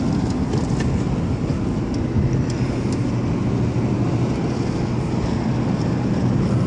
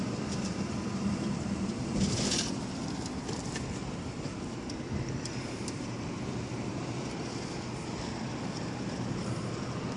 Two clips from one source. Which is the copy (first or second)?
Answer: second